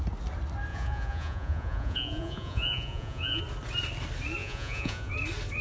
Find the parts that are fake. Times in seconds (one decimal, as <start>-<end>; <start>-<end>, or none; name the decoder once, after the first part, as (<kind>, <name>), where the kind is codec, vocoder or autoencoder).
0.7-3.4 (vocoder, Vocos); 4.4-5.1